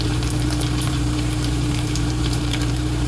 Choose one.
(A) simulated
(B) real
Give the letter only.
A